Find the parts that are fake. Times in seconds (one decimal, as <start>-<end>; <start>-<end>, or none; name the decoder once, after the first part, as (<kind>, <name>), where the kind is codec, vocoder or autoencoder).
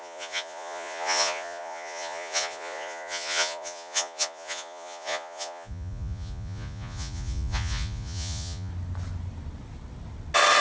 0.0-8.7 (vocoder, Vocos)